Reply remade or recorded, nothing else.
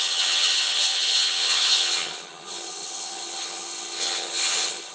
remade